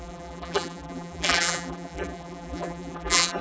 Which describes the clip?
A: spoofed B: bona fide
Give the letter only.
A